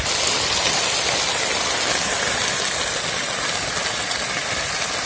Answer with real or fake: real